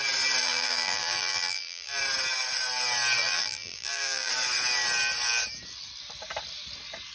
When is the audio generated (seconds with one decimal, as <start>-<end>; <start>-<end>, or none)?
0.4-2.0; 3.2-4.3